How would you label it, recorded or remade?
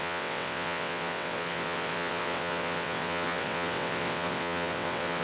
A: remade